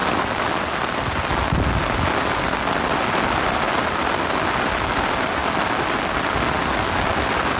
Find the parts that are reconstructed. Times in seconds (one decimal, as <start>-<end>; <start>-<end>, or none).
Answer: none